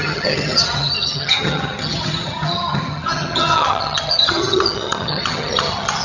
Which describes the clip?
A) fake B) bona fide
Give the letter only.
A